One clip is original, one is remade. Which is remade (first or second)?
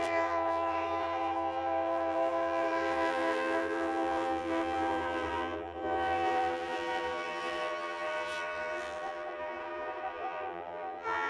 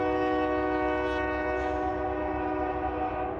first